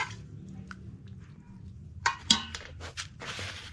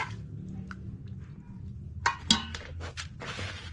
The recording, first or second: second